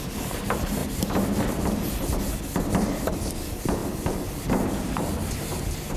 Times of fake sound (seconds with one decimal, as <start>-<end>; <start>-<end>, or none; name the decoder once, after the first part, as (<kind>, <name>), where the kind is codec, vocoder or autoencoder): none